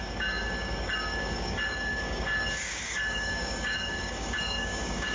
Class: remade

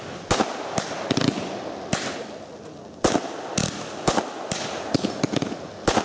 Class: recorded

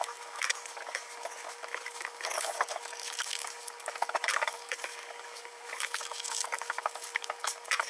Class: remade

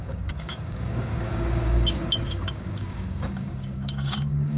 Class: remade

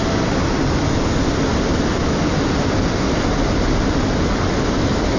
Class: recorded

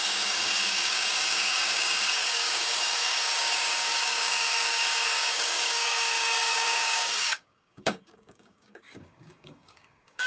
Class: remade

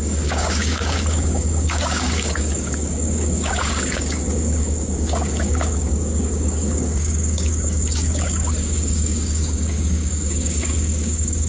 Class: remade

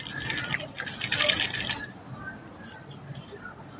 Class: recorded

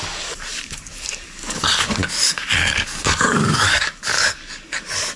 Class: remade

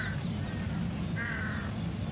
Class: recorded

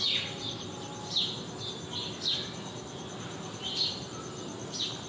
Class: recorded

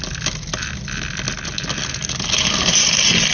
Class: recorded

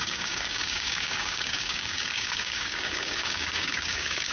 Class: remade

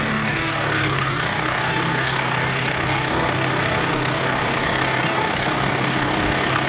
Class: remade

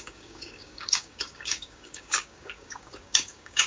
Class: remade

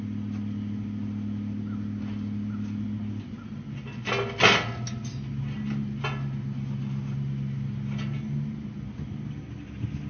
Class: recorded